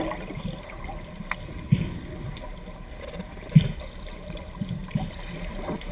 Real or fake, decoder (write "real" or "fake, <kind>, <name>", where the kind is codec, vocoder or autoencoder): real